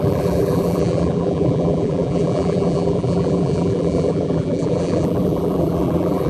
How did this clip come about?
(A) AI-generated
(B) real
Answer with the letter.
A